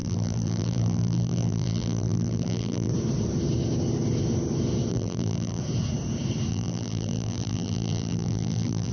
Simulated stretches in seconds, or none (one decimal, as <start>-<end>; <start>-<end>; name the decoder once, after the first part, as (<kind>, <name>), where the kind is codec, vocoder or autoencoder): 0.0-2.9 (vocoder, BigVGAN v2); 4.9-5.6; 6.5-8.9